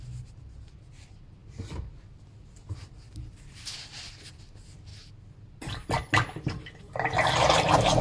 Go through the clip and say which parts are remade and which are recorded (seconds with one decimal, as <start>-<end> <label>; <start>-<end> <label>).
0.0-8.0 recorded